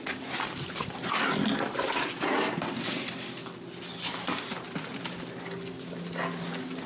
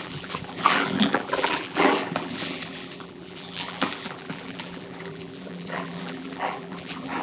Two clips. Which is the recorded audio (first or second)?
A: first